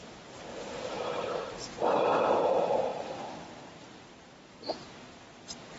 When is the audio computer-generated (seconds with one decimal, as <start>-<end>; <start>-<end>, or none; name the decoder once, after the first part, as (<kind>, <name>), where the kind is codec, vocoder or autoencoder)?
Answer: 0.5-2.1 (vocoder, BigVGAN v2); 2.9-4.7